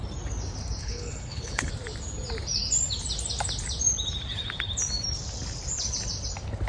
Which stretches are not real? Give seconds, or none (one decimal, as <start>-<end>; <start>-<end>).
0.8-1.7